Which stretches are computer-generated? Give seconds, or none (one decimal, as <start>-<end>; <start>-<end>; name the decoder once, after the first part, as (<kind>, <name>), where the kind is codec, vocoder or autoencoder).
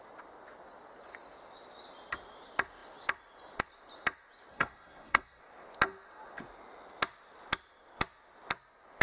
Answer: 4.5-5.4 (codec, SNAC)